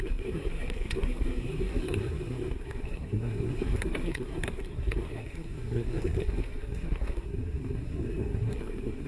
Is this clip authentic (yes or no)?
no